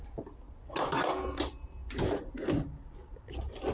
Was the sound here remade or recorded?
recorded